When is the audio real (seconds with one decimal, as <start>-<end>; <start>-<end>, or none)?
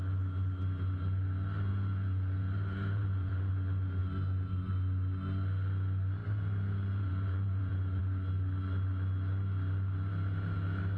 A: 0.0-1.7; 3.5-6.2; 8.0-11.0